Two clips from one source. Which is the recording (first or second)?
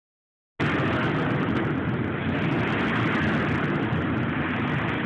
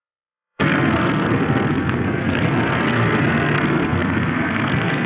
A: first